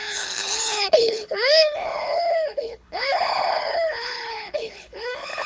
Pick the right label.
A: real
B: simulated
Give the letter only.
B